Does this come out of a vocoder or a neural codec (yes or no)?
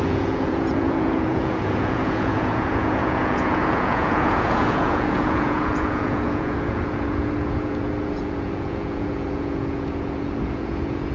yes